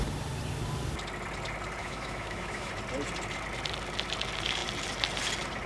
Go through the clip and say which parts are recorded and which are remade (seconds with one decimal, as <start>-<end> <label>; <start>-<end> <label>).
0.0-1.8 recorded; 1.8-2.7 remade; 2.7-5.7 recorded

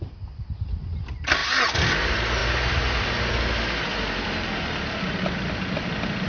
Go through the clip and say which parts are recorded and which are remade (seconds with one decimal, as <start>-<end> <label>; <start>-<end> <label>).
0.0-6.3 recorded

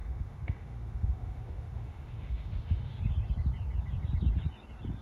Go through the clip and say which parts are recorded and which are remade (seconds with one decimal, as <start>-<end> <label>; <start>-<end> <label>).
0.0-3.0 remade; 3.0-5.0 recorded

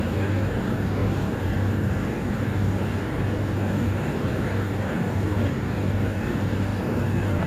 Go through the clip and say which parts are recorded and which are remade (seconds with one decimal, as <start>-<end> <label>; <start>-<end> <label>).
0.0-7.5 remade

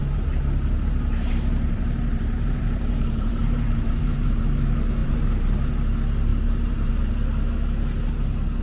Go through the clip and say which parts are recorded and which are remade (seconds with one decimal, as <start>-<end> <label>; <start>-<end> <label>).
0.0-4.4 remade; 4.4-5.0 recorded; 5.0-5.7 remade; 5.7-6.3 recorded; 6.3-6.9 remade; 6.9-8.6 recorded

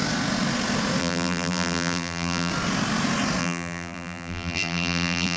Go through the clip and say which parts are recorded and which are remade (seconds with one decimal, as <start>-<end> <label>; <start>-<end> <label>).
0.0-1.0 recorded; 1.0-2.5 remade; 2.5-3.4 recorded; 3.4-5.4 remade

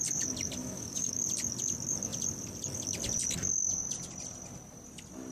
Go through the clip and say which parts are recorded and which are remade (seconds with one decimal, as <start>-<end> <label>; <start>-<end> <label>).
0.0-0.6 recorded; 0.6-1.2 remade; 1.2-5.3 recorded

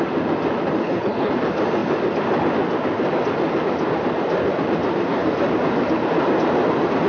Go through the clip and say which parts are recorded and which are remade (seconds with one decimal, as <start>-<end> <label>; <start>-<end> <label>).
0.0-0.8 recorded; 0.8-1.3 remade; 1.3-7.1 recorded